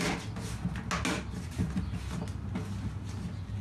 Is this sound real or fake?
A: real